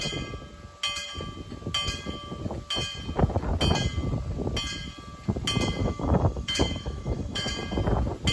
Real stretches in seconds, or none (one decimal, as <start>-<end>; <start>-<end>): 0.0-5.8; 7.5-8.3